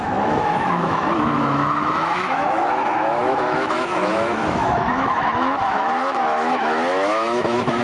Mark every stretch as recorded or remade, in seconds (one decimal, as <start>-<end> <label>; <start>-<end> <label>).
0.0-7.8 remade